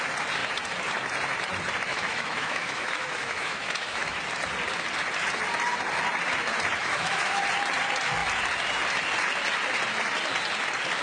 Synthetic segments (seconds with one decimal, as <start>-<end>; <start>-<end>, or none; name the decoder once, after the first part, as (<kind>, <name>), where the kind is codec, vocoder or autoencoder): 1.9-4.2 (autoencoder, DAC-VAE); 6.8-7.4